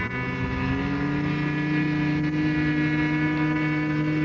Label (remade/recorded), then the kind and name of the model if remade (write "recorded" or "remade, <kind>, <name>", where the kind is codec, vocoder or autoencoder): recorded